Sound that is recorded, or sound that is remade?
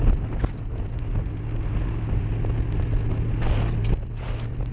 recorded